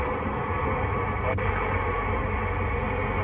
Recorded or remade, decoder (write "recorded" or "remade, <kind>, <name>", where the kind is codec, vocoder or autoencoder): recorded